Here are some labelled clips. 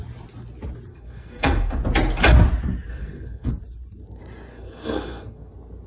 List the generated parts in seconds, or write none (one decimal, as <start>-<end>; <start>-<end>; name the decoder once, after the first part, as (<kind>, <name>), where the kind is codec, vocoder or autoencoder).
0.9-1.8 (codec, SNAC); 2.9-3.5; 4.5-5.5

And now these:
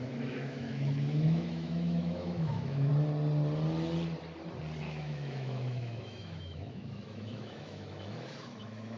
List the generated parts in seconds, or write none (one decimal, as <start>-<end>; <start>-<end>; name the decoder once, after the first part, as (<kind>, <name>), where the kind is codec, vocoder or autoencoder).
0.0-2.9 (autoencoder, DAC-VAE); 4.8-9.0

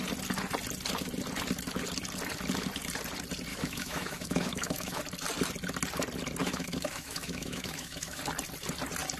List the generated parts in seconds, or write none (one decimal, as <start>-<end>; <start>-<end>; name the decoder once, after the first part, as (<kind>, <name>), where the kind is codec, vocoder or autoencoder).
3.5-5.0 (autoencoder, DAC-VAE); 6.4-8.2

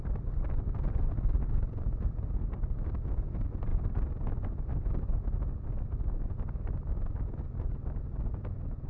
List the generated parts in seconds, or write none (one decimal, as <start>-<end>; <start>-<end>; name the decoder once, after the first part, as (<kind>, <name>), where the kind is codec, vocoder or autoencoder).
none

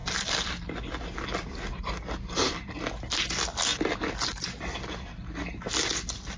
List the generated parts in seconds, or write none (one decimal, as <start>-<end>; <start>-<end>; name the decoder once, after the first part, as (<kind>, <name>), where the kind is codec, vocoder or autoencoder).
none

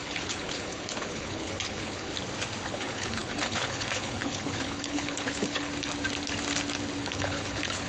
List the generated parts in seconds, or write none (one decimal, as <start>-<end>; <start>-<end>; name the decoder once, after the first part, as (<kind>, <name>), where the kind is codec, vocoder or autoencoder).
0.0-2.1 (codec, HILCodec); 2.7-5.7; 7.0-7.9